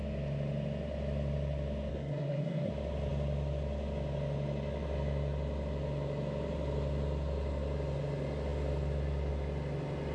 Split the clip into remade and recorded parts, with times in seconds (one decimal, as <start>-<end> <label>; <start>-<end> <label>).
0.0-1.9 recorded; 1.9-2.7 remade; 2.7-10.1 recorded